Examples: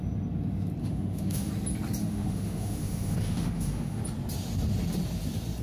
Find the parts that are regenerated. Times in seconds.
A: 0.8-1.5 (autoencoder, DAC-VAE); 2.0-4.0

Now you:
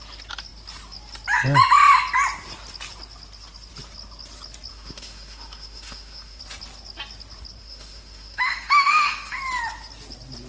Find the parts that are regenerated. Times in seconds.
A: 4.7-6.4 (autoencoder, DAC-VAE); 7.6-9.4

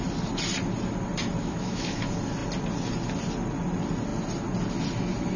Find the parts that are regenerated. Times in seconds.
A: 1.4-2.0 (autoencoder, DAC-VAE)

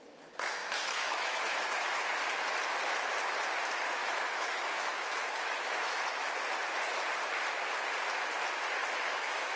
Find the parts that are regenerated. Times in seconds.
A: 0.6-2.0 (autoencoder, DAC-VAE); 4.0-6.3; 8.8-9.6

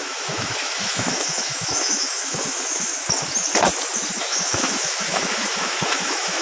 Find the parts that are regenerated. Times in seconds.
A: 0.0-2.9 (autoencoder, DAC-VAE); 4.2-6.4

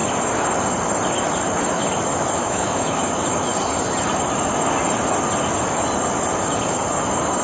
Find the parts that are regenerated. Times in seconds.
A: 2.4-3.0 (autoencoder, DAC-VAE)

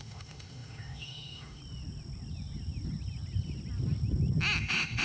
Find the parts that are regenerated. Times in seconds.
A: 0.0-1.6 (autoencoder, DAC-VAE); 4.6-5.0